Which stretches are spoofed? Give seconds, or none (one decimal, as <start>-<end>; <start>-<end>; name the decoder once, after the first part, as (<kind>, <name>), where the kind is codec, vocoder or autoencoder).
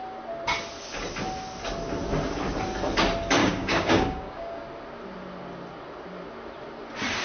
3.4-4.6 (codec, DAC)